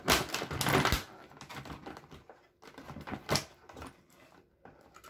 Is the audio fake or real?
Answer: real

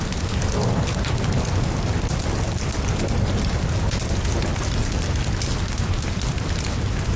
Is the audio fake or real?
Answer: real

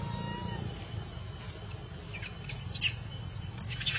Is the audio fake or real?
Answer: real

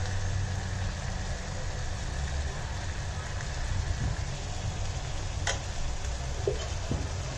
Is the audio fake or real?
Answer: real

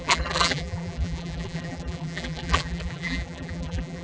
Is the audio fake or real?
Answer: fake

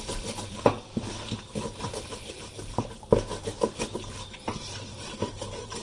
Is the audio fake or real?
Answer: fake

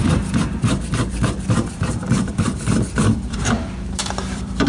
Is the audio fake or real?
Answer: fake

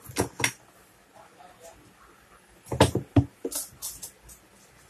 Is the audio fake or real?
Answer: real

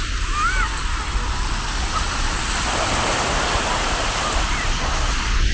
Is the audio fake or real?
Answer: real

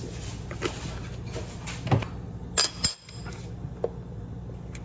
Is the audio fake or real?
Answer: real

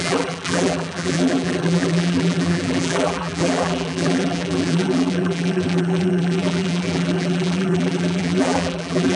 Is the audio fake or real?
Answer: fake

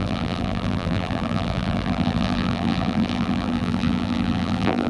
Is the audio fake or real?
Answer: fake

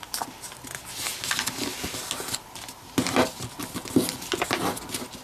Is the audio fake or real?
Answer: real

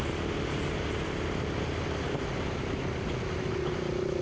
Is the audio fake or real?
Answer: real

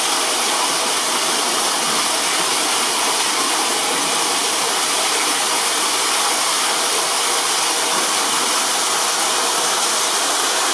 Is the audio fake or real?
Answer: real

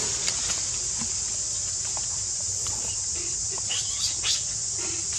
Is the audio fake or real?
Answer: real